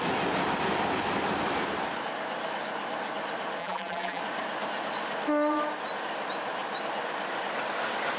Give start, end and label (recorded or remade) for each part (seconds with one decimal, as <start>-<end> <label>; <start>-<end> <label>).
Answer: 0.0-3.6 recorded; 3.6-4.2 remade; 4.2-8.2 recorded